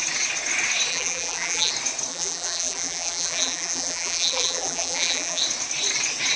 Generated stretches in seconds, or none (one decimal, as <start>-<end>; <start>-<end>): 0.9-1.7; 2.1-5.4